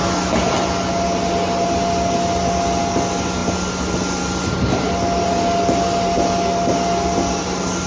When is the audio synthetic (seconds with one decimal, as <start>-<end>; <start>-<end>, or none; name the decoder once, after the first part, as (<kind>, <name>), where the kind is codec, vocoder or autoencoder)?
none